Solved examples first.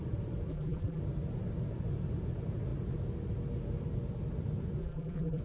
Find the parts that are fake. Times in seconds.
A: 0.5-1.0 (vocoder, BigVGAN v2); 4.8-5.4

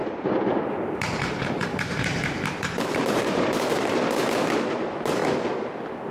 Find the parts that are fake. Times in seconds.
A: 0.0-0.6 (vocoder, BigVGAN v2); 1.7-3.8

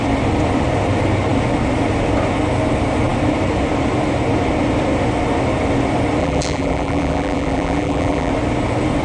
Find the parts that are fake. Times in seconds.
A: 6.2-8.3 (vocoder, BigVGAN v2)

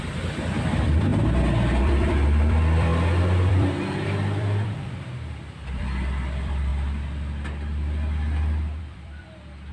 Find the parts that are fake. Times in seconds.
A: 0.0-1.1 (vocoder, BigVGAN v2); 1.8-2.9; 3.5-6.7; 8.8-9.7

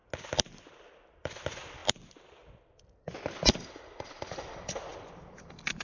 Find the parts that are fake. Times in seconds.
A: 0.7-1.8 (vocoder, BigVGAN v2); 3.2-5.8

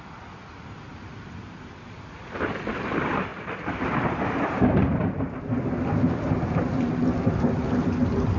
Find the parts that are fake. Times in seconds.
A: 0.0-8.4 (vocoder, BigVGAN v2)